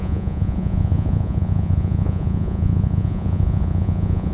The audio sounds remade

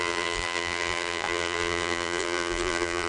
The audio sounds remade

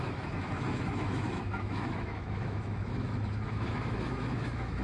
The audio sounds remade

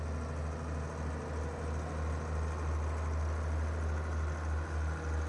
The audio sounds recorded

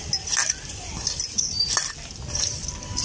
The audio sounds recorded